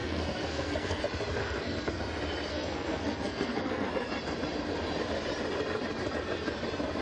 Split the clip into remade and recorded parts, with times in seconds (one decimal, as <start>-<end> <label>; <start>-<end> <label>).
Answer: 0.0-1.0 remade; 1.0-1.4 recorded; 1.4-2.0 remade; 2.0-2.5 recorded; 2.5-3.9 remade; 3.9-7.0 recorded